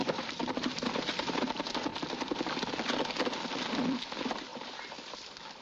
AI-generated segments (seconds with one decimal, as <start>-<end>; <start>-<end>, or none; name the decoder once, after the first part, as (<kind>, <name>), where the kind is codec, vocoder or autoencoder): 0.0-1.4 (vocoder, BigVGAN v2); 4.5-5.6